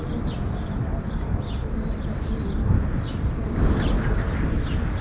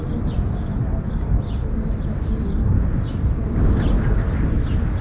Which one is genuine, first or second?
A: second